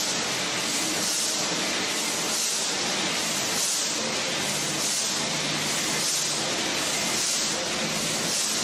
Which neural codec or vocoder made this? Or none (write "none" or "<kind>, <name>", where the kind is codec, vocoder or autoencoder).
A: none